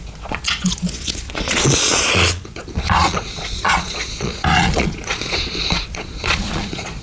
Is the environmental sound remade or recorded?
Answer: remade